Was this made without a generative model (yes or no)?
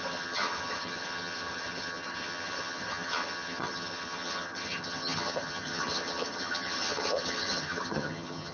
no